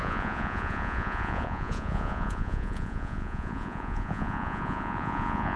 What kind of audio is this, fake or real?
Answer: fake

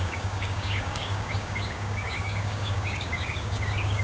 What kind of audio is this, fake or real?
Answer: fake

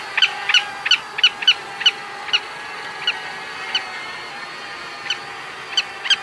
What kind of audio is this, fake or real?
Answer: real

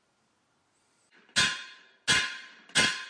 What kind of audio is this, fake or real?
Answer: real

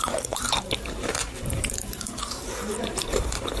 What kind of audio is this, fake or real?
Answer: fake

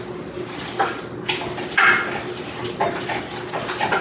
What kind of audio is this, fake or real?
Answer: real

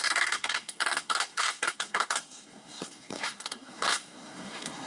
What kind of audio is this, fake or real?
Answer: fake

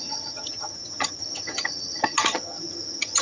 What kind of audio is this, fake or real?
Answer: fake